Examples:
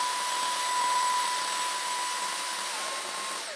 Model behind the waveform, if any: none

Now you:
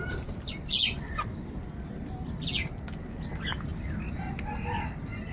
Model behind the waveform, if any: none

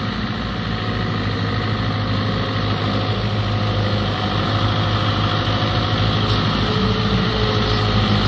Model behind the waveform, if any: none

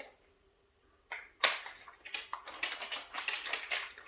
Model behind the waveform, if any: none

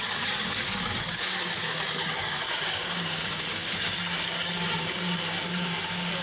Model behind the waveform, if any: codec, DAC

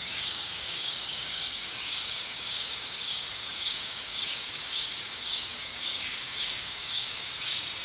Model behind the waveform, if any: codec, DAC